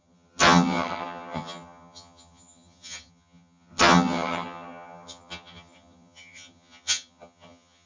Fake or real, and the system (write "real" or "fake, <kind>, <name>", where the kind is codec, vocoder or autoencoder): fake, vocoder, HiFi-GAN